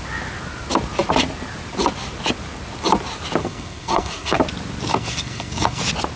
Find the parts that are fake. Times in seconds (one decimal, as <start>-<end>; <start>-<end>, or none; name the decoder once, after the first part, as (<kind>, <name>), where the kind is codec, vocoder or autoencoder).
3.4-4.4 (codec, SNAC); 4.9-5.8